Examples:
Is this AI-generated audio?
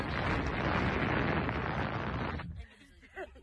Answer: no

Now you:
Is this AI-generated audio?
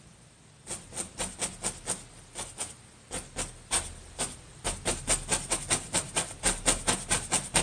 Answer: no